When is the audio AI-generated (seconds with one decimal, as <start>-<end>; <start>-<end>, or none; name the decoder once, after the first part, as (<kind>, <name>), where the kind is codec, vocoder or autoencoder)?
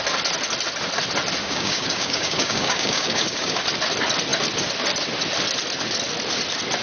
1.4-3.6 (codec, DAC)